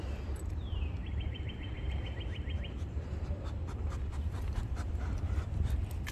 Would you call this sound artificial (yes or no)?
yes